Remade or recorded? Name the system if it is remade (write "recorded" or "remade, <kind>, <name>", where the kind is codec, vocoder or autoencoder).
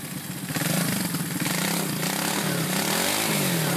recorded